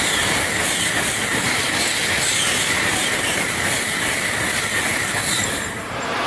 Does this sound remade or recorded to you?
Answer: recorded